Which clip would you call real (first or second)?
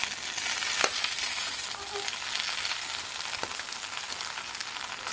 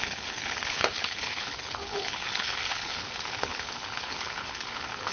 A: first